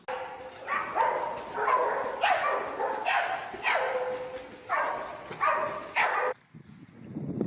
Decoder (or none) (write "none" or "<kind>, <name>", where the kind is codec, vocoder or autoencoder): none